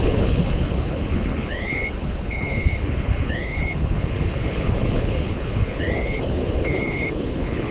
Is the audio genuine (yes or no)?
no